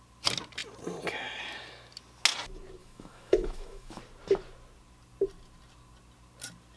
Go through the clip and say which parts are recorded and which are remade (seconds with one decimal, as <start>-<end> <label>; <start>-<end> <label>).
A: 0.0-2.8 recorded; 2.8-4.0 remade; 4.0-6.8 recorded